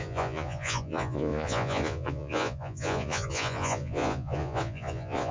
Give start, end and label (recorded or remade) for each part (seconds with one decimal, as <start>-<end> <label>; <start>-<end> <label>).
0.0-5.3 remade